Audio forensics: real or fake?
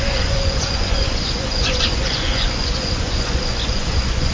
fake